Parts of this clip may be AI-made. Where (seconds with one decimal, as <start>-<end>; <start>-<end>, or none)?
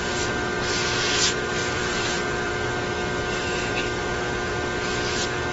1.6-2.5